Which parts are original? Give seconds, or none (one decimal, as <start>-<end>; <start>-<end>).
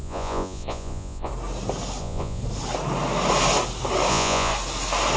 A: 1.3-2.0; 2.4-4.1; 4.5-5.2